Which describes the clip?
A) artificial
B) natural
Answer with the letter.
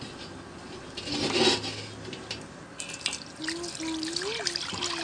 B